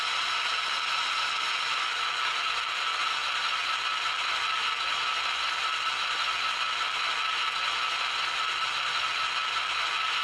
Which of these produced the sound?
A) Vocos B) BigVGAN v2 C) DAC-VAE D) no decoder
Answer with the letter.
D